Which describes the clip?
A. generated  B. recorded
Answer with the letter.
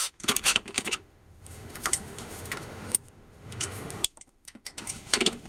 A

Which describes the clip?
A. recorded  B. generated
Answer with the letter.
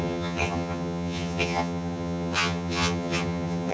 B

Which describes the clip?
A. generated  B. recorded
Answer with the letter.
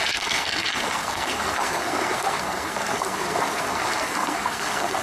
A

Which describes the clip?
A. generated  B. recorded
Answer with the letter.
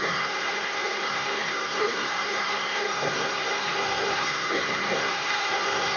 A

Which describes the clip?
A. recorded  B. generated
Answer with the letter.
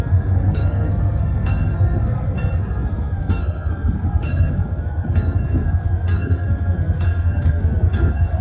B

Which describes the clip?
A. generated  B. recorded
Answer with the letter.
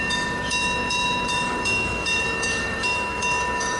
A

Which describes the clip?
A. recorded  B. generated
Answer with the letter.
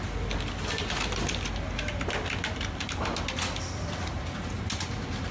A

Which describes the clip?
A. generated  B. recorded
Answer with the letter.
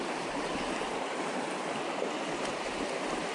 A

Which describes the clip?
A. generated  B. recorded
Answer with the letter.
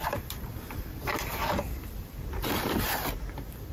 A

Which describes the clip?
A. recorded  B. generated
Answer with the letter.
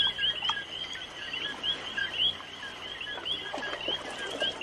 A